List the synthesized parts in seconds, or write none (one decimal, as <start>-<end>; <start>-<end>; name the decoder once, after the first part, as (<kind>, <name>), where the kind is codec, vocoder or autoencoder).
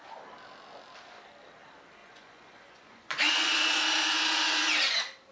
2.0-3.8 (vocoder, Vocos)